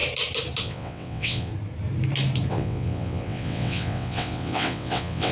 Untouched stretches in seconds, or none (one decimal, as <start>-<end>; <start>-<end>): 0.0-0.6; 1.5-2.5